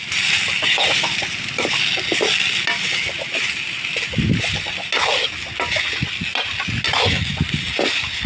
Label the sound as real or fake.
real